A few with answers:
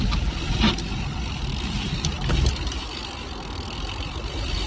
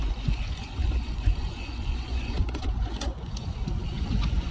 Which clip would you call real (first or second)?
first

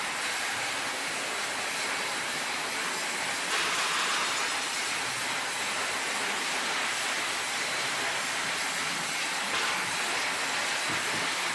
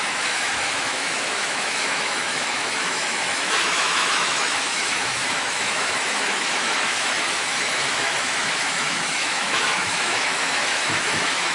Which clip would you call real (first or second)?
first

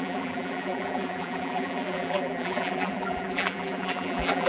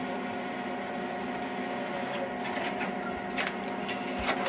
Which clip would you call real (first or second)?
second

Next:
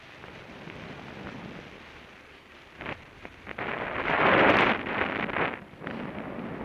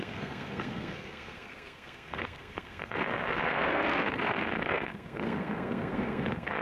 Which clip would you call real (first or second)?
first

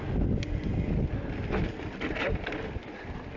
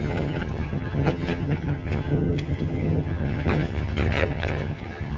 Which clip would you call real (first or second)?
first